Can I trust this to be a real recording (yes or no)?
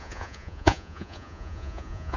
no